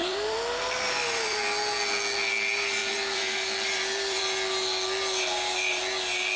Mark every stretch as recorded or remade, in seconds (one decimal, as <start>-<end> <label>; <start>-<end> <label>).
0.0-1.4 remade; 1.4-2.8 recorded; 2.8-4.2 remade; 4.2-6.4 recorded